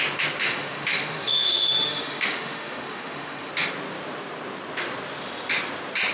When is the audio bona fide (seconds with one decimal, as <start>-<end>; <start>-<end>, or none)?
0.0-0.4; 3.5-6.1